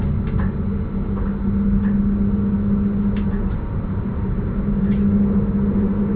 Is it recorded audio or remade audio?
recorded